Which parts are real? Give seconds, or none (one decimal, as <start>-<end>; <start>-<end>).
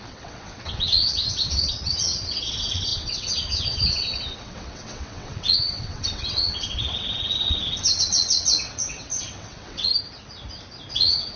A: 9.9-10.9